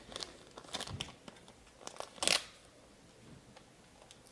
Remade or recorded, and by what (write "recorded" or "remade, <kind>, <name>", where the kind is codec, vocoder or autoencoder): recorded